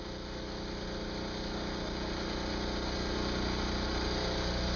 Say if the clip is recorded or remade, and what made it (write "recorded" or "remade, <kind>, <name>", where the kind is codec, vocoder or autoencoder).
recorded